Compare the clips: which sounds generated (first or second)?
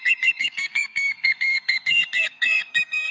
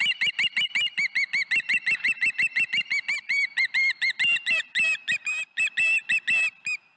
first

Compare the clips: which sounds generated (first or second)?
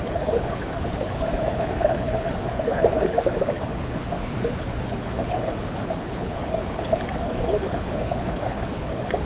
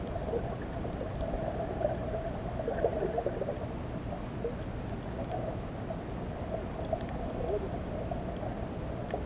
first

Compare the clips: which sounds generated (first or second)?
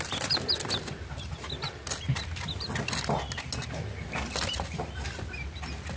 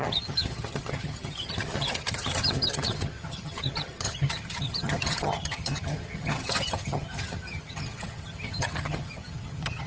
second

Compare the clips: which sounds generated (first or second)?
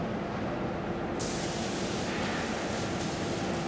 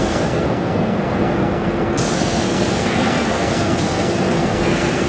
second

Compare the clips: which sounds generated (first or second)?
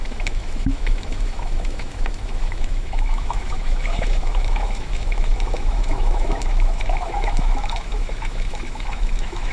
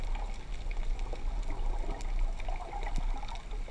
first